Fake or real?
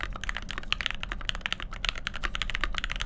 real